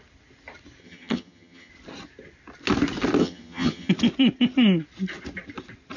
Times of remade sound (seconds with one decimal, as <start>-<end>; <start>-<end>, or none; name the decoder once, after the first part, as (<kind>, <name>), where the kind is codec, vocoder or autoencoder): 0.8-1.7 (vocoder, HiFi-GAN); 3.2-3.9